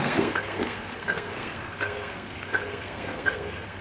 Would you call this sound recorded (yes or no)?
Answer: no